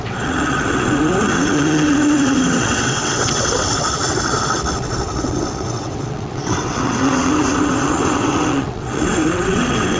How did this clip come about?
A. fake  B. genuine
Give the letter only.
A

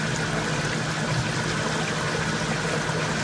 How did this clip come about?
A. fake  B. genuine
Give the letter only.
B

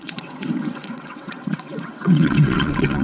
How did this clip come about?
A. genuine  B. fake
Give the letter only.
B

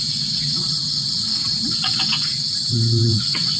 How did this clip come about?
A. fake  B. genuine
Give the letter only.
A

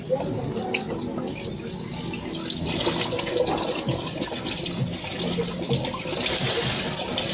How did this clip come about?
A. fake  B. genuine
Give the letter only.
B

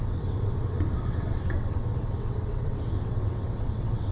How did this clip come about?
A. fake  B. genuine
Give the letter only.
A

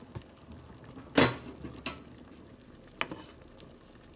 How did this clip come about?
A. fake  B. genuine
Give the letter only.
B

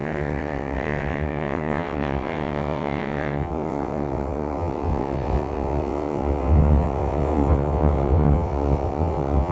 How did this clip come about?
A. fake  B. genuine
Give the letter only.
A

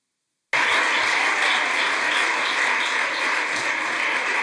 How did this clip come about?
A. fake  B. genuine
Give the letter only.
B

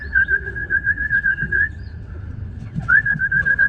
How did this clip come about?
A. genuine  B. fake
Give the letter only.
B